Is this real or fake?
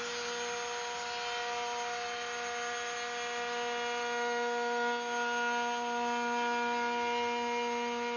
real